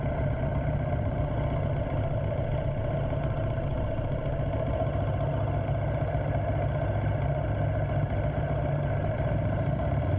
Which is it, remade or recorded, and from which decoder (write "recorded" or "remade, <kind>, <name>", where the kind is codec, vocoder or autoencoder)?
recorded